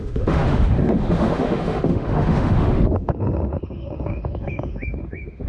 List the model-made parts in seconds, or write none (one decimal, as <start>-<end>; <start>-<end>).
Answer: 0.0-5.5